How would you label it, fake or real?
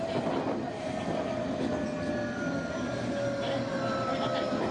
real